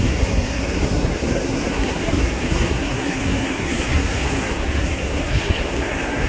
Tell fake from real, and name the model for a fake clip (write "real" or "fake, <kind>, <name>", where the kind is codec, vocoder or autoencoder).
fake, codec, SNAC